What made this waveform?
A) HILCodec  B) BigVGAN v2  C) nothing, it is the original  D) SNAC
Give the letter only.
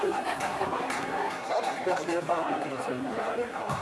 D